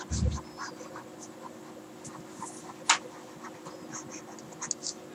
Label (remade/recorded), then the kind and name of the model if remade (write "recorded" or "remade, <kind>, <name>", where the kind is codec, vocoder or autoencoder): recorded